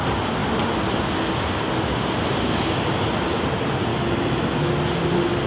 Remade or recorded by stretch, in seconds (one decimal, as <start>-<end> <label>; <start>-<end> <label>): 0.0-3.9 recorded; 3.9-4.7 remade; 4.7-5.5 recorded